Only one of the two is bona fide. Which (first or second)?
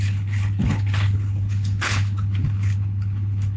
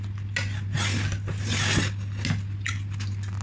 second